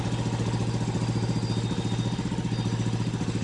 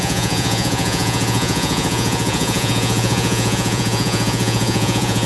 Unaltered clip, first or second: first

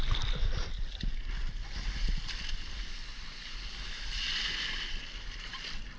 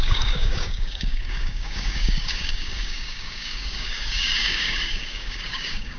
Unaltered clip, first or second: first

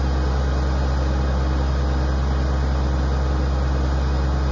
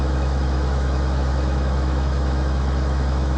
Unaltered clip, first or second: first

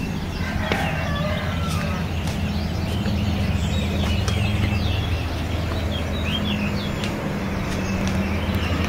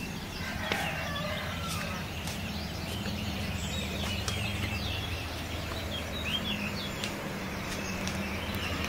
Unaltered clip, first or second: first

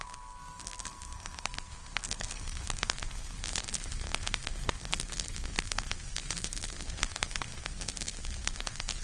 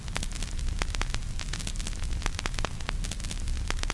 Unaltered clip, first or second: second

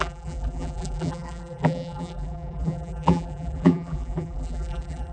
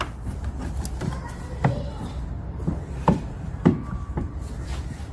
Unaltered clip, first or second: second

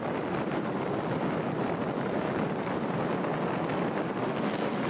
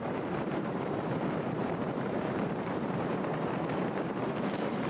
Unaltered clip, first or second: first